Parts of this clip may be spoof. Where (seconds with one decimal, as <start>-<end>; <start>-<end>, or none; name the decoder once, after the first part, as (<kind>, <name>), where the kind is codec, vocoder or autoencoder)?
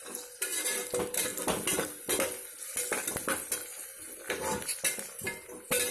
none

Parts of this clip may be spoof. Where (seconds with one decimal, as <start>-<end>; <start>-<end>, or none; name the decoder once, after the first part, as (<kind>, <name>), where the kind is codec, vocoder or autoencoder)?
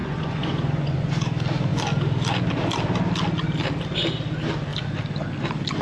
0.0-1.1 (vocoder, Vocos)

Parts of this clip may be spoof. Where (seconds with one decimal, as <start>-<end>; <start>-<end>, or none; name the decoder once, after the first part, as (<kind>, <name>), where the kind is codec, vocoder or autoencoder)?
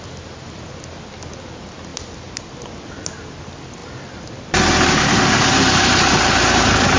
none